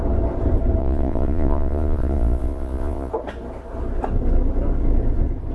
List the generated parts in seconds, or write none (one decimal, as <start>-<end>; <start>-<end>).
0.8-3.1